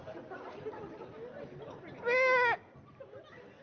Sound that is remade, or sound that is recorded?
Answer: recorded